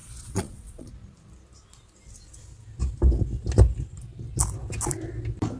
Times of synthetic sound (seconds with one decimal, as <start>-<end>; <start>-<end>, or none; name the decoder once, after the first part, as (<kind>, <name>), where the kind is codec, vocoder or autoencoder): 0.0-0.9 (vocoder, Vocos)